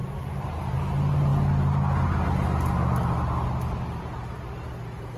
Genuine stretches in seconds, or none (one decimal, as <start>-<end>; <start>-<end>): 0.8-5.2